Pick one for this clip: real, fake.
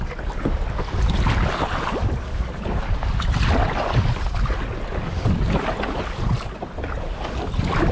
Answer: real